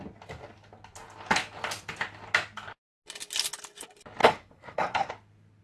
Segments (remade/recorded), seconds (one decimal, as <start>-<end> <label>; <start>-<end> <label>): 0.0-4.2 recorded; 4.2-5.1 remade; 5.1-5.6 recorded